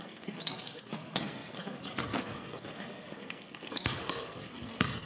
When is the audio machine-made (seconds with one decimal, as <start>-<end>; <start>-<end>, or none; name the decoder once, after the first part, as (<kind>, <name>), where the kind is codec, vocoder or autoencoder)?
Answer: 0.0-5.0 (codec, SNAC)